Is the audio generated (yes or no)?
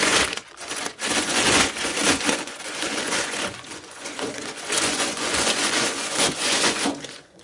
yes